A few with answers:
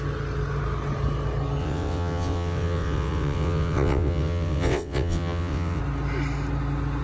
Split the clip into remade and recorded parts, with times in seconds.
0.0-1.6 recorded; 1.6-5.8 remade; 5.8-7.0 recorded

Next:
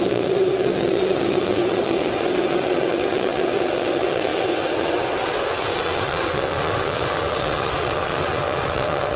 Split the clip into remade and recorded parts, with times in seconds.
0.0-9.2 remade

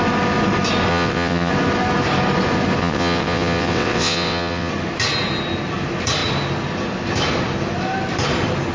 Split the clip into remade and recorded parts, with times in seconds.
0.0-0.9 recorded; 0.9-1.5 remade; 1.5-2.8 recorded; 2.8-4.7 remade; 4.7-8.7 recorded

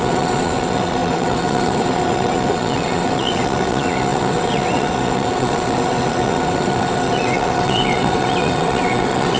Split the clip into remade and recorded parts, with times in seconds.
0.0-9.4 remade

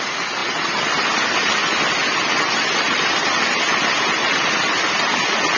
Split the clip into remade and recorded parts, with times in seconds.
0.0-5.6 recorded